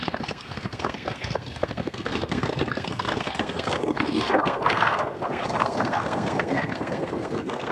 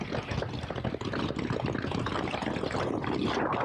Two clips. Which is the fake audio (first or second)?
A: first